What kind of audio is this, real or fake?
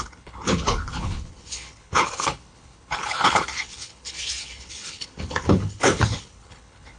fake